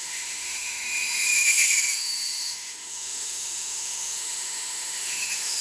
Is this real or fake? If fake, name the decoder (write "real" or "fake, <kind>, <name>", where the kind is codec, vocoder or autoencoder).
fake, autoencoder, DAC-VAE